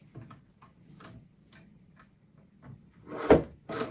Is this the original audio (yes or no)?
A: yes